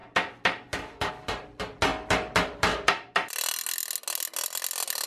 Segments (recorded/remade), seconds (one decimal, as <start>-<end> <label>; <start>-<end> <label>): 0.0-5.1 recorded